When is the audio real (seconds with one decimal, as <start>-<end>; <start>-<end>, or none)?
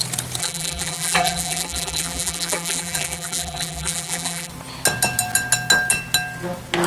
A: 0.0-0.4; 4.5-6.9